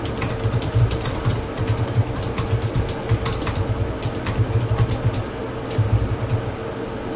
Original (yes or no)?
yes